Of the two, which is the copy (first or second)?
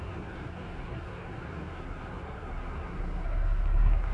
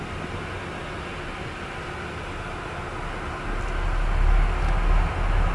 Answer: first